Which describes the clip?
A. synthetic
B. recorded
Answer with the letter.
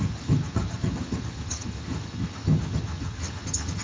A